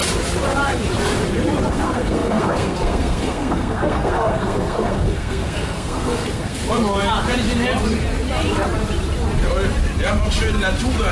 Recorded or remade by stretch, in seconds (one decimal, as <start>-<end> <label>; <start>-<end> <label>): 0.0-1.7 recorded; 1.7-6.6 remade; 6.6-11.1 recorded